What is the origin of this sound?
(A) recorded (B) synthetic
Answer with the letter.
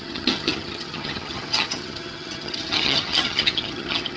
B